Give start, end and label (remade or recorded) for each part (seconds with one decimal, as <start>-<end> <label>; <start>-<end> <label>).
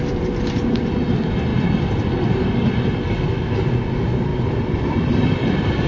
0.0-1.5 recorded; 1.5-2.4 remade; 2.4-4.3 recorded; 4.3-5.9 remade